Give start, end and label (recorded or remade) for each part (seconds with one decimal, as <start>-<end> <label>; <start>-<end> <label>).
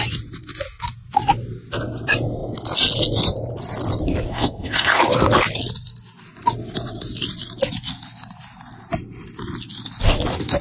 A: 0.0-4.3 recorded; 4.3-5.0 remade; 5.0-10.6 recorded